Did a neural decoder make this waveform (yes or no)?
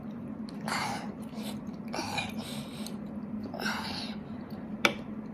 no